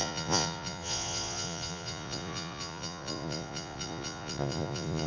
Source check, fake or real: fake